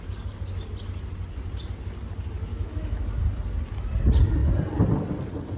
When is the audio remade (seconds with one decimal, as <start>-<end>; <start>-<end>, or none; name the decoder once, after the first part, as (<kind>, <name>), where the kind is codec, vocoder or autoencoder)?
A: 2.5-3.2 (autoencoder, DAC-VAE)